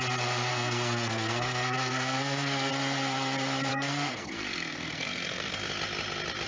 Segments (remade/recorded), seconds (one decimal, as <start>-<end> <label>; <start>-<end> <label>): 0.0-0.5 recorded; 0.5-2.7 remade; 2.7-3.7 recorded; 3.7-5.7 remade; 5.7-6.5 recorded